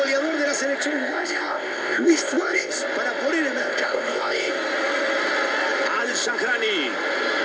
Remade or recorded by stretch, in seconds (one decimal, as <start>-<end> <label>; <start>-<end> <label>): 0.0-0.8 recorded; 0.8-2.7 remade; 2.7-3.6 recorded; 3.6-4.5 remade; 4.5-7.4 recorded